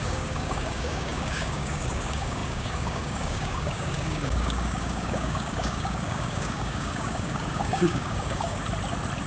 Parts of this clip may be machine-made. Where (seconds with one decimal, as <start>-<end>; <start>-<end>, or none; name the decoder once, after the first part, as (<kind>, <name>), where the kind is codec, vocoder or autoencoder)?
0.0-8.6 (codec, DAC)